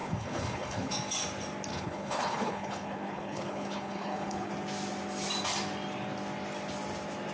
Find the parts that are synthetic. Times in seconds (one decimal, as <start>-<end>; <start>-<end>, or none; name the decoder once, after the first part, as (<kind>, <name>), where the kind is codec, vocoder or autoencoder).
0.0-0.9 (codec, HILCodec); 1.7-4.5

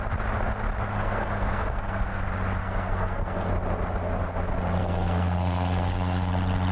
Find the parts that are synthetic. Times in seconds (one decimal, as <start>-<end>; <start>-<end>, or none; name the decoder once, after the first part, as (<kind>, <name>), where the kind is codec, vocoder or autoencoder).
0.9-2.2 (codec, SNAC); 2.6-3.5; 4.8-6.3

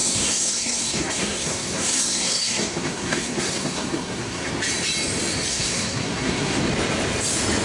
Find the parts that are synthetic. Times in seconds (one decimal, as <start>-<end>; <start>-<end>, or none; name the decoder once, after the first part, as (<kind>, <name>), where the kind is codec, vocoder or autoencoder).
0.0-4.5 (codec, SNAC); 5.5-6.6

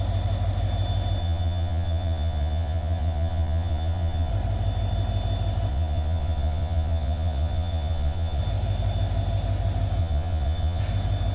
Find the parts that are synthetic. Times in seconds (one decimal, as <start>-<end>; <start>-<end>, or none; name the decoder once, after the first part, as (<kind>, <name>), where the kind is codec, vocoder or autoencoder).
1.2-4.3 (vocoder, Vocos); 5.7-8.4; 10.0-10.8

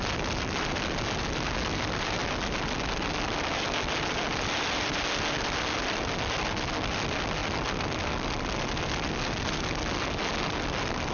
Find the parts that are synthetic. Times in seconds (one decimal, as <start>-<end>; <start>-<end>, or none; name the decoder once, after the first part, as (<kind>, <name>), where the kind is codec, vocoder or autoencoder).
none